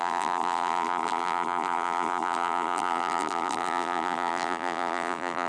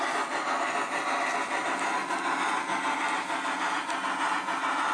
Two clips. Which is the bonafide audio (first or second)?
second